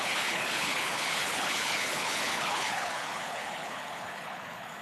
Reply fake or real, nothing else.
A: fake